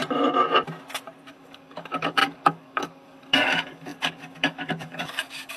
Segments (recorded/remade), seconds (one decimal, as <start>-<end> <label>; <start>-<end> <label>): 0.0-1.3 recorded; 1.3-5.6 remade